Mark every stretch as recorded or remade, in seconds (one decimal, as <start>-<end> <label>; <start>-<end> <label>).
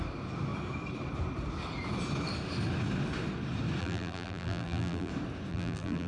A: 0.0-3.8 recorded; 3.8-5.1 remade; 5.1-5.5 recorded; 5.5-6.1 remade